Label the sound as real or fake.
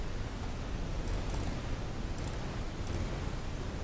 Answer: real